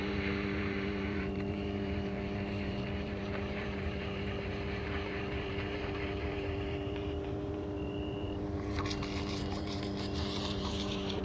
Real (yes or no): no